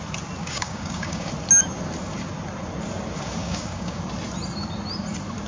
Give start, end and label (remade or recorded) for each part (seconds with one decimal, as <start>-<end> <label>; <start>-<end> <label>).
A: 0.0-0.4 recorded; 0.4-1.3 remade; 1.3-3.4 recorded; 3.4-4.0 remade; 4.0-5.5 recorded